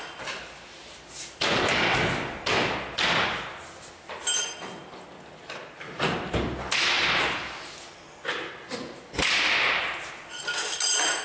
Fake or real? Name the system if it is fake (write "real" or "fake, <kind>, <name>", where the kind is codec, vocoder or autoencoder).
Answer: real